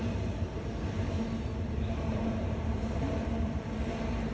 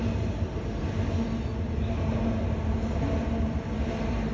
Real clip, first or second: second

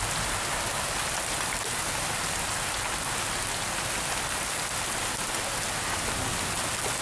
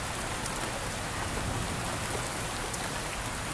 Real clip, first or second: first